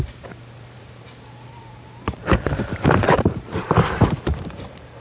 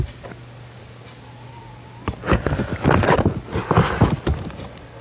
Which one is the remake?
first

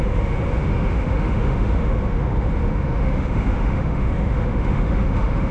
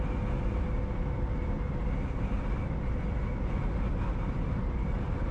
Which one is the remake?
first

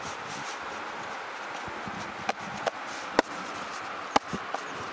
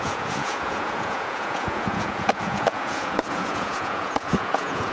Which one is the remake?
second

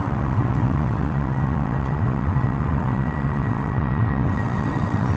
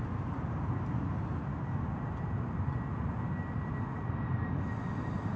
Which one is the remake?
first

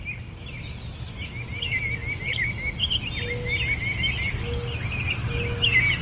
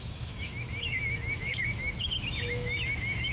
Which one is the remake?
second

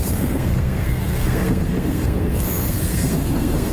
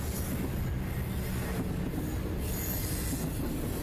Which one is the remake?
first